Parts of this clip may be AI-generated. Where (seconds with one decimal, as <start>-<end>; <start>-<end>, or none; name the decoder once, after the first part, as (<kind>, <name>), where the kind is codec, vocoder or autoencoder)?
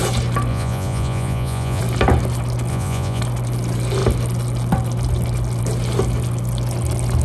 0.5-1.8 (vocoder, Vocos); 2.7-3.2